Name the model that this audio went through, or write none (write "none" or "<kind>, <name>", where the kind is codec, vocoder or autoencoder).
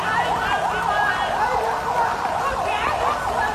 none